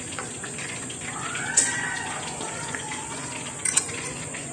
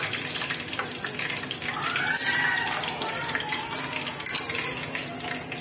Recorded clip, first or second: second